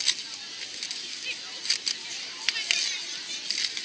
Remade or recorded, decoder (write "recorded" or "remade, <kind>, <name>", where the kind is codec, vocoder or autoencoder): recorded